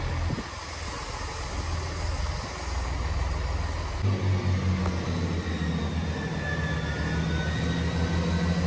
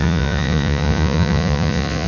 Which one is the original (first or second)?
first